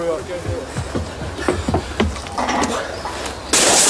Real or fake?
real